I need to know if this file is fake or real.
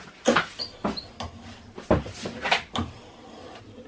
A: real